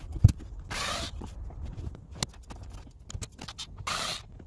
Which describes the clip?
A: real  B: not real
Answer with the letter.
A